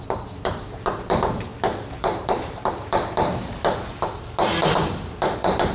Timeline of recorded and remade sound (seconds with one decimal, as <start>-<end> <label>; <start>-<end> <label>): 0.0-1.5 remade; 1.5-2.0 recorded; 2.0-3.3 remade; 3.3-4.7 recorded; 4.7-5.7 remade